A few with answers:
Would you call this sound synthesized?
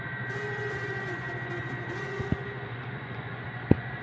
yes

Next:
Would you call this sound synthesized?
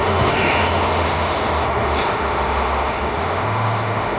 yes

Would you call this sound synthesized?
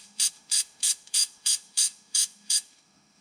yes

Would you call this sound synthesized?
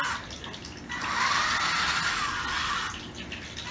no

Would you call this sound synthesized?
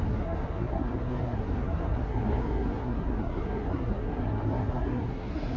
yes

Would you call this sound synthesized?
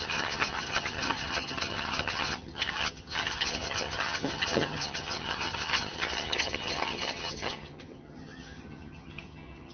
yes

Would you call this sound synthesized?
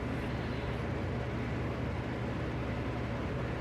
no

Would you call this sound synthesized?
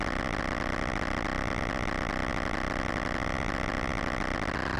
no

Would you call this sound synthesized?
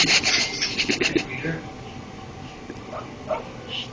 no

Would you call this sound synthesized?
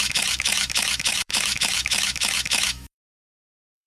yes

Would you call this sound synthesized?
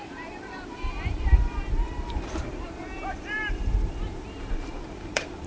yes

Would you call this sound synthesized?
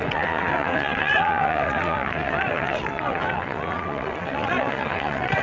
yes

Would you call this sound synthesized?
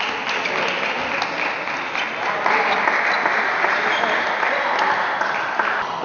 no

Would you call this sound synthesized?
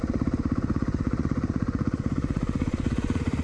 yes